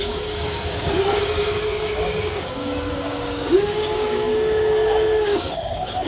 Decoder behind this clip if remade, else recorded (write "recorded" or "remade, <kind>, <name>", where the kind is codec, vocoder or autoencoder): remade, codec, DAC